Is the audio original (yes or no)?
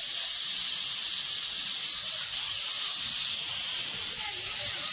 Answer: yes